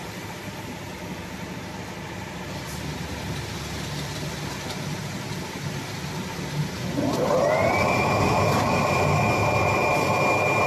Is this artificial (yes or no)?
no